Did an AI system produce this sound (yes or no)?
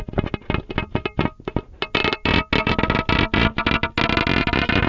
no